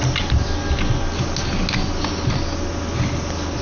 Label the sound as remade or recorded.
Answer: recorded